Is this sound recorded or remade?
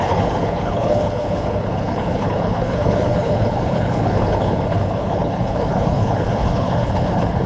remade